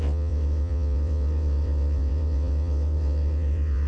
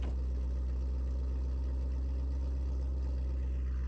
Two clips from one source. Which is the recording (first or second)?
second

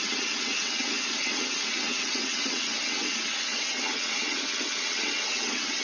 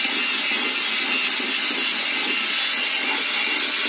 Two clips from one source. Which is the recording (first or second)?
second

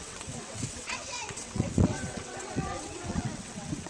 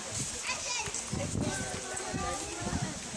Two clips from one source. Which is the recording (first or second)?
second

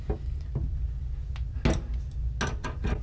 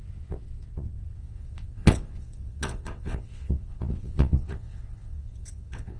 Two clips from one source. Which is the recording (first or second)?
first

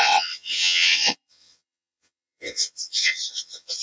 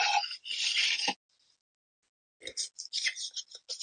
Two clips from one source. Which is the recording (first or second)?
second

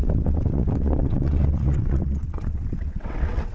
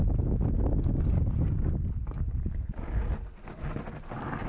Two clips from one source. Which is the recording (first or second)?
second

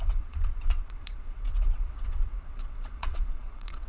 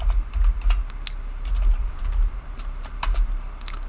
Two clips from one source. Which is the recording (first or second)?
second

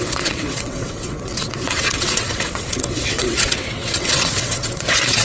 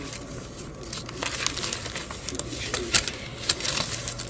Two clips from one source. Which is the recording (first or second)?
second